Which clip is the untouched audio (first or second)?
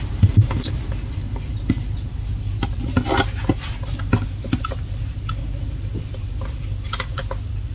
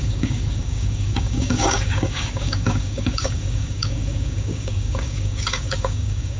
first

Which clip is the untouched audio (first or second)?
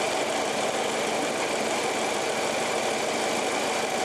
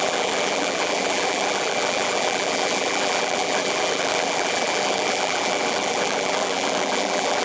first